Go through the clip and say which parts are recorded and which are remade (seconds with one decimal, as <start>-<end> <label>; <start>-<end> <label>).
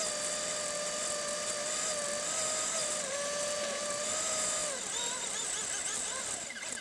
0.0-6.8 recorded